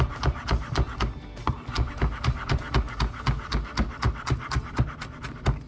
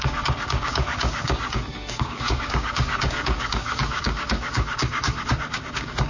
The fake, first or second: second